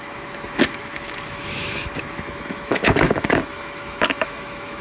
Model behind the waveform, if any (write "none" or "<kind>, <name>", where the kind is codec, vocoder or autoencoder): autoencoder, DAC-VAE